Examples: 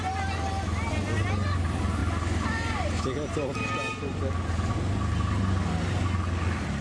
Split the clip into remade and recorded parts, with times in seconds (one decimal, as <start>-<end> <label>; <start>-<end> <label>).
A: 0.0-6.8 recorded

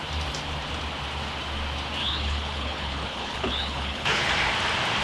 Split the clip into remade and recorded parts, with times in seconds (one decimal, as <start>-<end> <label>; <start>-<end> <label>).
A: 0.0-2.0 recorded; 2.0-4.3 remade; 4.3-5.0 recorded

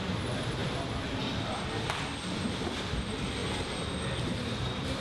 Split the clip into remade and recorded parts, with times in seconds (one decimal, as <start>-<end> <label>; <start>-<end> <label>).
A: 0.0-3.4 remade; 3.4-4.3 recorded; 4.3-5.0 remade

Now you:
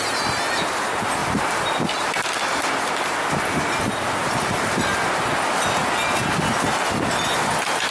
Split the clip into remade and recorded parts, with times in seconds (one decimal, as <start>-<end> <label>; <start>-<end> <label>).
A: 0.0-7.9 recorded

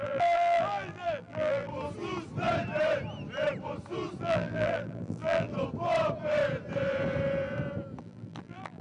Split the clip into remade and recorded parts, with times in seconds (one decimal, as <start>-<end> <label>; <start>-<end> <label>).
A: 0.0-1.7 remade; 1.7-4.2 recorded; 4.2-5.5 remade; 5.5-8.0 recorded; 8.0-8.8 remade